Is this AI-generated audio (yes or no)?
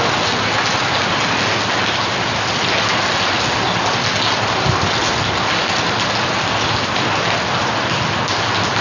no